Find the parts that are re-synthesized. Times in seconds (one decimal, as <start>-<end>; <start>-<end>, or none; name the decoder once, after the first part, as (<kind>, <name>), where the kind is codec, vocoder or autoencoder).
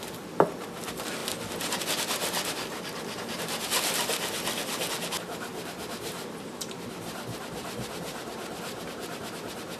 5.5-9.8 (vocoder, BigVGAN v2)